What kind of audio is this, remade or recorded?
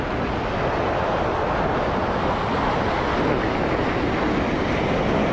recorded